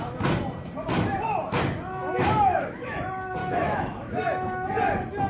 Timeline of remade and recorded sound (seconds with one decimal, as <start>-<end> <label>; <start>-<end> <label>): 0.0-2.0 recorded; 2.0-3.0 remade; 3.0-3.4 recorded; 3.4-4.7 remade; 4.7-5.3 recorded